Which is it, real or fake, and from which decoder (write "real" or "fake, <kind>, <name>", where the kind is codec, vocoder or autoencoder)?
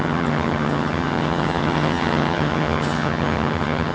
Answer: fake, vocoder, HiFi-GAN